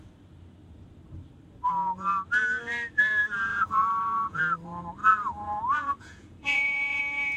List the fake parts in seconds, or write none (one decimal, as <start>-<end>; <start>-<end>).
3.5-4.4; 5.0-7.0